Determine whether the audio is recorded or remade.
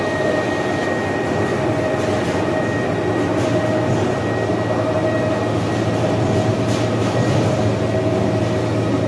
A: recorded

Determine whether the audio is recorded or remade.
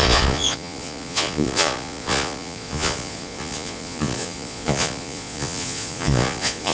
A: remade